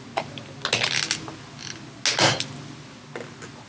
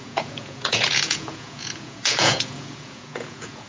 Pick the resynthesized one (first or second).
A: second